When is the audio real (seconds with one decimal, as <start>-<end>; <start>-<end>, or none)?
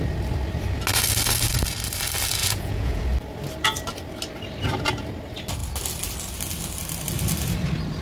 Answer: 0.0-2.4; 3.0-8.0